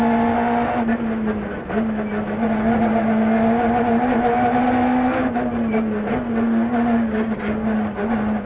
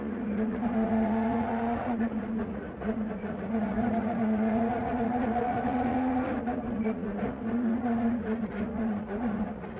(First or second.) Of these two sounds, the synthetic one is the second